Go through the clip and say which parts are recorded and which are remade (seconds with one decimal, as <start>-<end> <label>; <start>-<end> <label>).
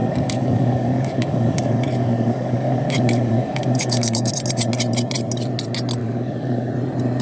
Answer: 0.0-4.3 remade; 4.3-6.0 recorded; 6.0-6.7 remade; 6.7-7.2 recorded